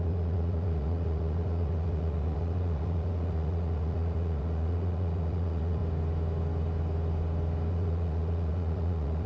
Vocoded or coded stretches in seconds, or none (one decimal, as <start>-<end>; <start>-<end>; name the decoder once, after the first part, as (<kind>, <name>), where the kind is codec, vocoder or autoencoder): 0.0-5.8 (vocoder, Vocos); 7.7-9.3

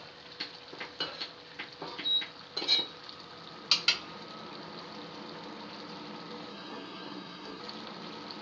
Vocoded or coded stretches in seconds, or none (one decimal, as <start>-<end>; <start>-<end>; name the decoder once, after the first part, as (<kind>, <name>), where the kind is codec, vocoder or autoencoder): 6.5-7.6 (codec, SNAC)

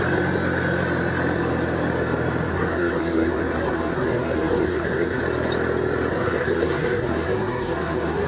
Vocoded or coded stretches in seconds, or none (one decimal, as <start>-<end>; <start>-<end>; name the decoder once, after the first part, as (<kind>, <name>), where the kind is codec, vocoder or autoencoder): 2.5-5.2 (codec, SNAC); 6.1-8.3

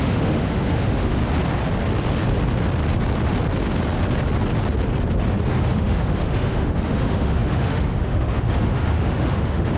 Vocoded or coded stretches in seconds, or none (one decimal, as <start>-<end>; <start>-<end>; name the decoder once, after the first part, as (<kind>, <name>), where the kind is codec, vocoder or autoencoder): 0.0-1.2 (autoencoder, DAC-VAE); 5.5-9.8

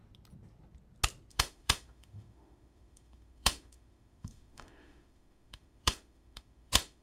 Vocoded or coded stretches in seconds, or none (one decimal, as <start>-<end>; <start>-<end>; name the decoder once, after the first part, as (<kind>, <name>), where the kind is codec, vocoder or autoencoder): 1.3-7.0 (autoencoder, DAC-VAE)